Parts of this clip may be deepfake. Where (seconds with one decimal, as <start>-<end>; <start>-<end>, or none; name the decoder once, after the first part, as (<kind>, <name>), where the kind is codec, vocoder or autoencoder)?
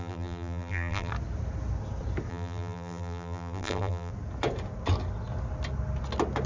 0.0-1.1 (vocoder, BigVGAN v2); 2.3-4.1